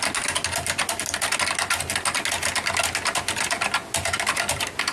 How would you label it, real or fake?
real